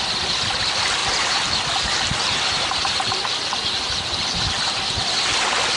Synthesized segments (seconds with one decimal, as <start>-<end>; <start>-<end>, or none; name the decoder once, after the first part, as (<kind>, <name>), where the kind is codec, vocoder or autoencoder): 1.0-4.5 (vocoder, BigVGAN v2)